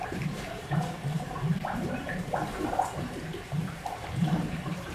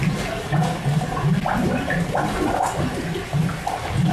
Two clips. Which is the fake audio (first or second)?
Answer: first